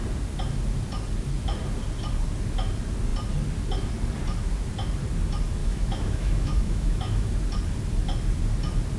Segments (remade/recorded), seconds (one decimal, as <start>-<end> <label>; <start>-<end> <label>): 0.0-5.6 recorded; 5.6-7.3 remade; 7.3-9.0 recorded